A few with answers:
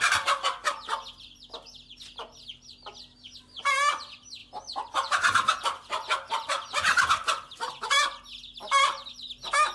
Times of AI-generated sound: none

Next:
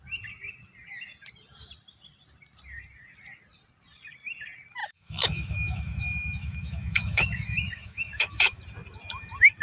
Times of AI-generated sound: 4.8-8.6 (autoencoder, DAC-VAE)

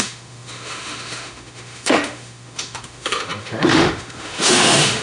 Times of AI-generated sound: 0.0-5.0 (autoencoder, DAC-VAE)

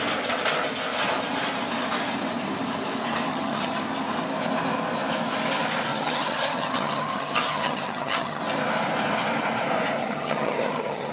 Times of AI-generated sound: 3.3-3.8 (vocoder, HiFi-GAN); 5.9-8.4; 10.0-11.1